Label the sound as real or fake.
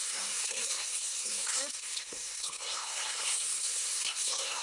fake